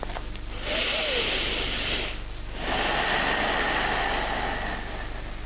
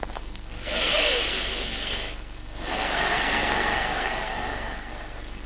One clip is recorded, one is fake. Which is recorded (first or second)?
first